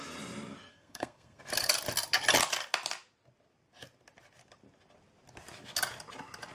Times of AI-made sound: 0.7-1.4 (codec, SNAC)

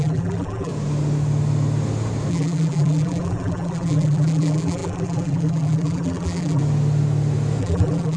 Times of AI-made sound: 0.0-0.7 (vocoder, BigVGAN v2); 2.3-6.6; 7.6-8.2

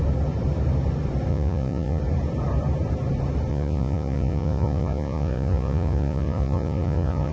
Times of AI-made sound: 1.3-2.0 (vocoder, Vocos); 3.5-7.3

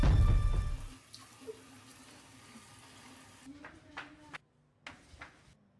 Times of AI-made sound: none

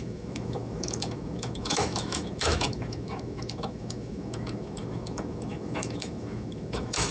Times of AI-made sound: 0.0-7.1 (autoencoder, DAC-VAE)

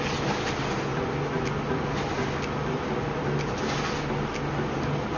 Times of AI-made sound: 0.0-5.2 (vocoder, BigVGAN v2)